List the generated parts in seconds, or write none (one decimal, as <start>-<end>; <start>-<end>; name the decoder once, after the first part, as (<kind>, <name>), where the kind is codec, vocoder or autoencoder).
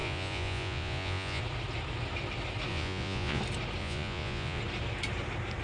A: 0.0-1.4 (vocoder, Vocos); 2.7-3.4; 3.8-4.6